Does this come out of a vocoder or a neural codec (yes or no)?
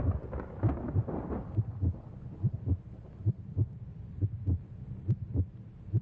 no